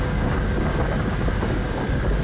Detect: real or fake fake